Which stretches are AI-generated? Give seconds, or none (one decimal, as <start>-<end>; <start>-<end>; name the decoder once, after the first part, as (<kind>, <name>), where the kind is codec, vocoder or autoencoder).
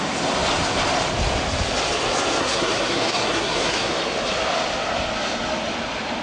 2.4-3.9 (codec, SNAC)